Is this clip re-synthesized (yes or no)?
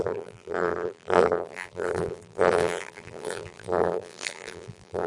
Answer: yes